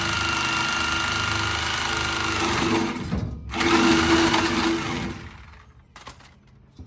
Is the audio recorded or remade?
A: recorded